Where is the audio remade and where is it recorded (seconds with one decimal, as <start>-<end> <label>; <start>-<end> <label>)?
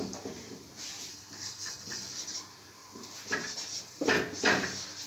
0.0-1.1 recorded; 1.1-2.1 remade; 2.1-5.1 recorded